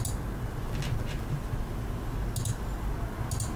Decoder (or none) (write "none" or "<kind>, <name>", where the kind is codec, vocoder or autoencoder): none